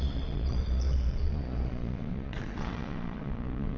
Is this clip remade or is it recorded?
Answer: remade